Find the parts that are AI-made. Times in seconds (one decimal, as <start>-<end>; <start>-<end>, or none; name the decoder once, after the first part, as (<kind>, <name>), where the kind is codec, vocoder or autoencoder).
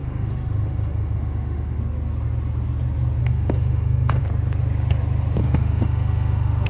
0.0-1.8 (autoencoder, DAC-VAE); 3.2-4.2; 5.4-6.7